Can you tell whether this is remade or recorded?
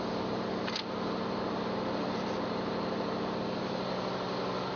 recorded